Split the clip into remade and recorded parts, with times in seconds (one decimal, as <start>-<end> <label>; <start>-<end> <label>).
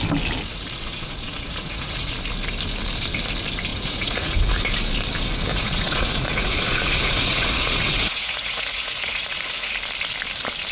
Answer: 0.0-0.5 recorded; 0.5-2.1 remade; 2.1-3.7 recorded; 3.7-4.6 remade; 4.6-5.5 recorded; 5.5-9.7 remade; 9.7-10.7 recorded